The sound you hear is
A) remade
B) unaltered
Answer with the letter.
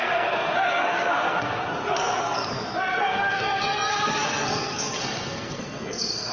A